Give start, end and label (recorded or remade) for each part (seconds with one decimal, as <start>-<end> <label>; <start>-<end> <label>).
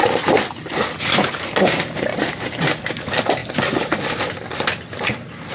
0.0-0.8 remade; 0.8-2.1 recorded; 2.1-2.8 remade; 2.8-5.5 recorded